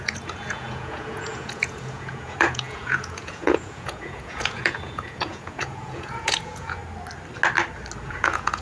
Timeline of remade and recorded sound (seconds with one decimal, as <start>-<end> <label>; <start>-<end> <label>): 0.0-6.8 remade; 6.8-8.0 recorded; 8.0-8.6 remade